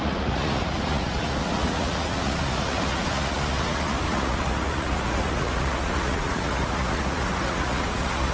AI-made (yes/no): yes